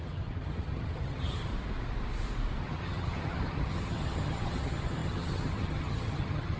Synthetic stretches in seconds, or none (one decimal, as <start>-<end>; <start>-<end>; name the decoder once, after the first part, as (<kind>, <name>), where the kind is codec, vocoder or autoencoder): 0.0-1.5 (vocoder, HiFi-GAN); 2.6-6.6